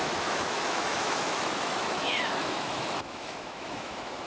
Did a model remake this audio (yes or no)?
yes